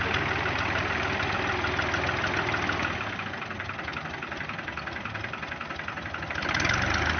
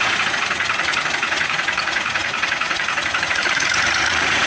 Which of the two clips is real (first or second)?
first